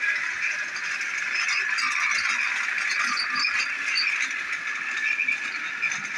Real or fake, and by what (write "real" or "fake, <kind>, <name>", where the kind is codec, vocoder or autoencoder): real